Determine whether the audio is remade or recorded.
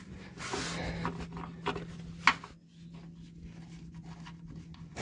recorded